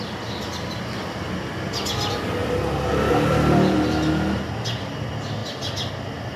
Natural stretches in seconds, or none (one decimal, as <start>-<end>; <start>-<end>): 0.0-6.4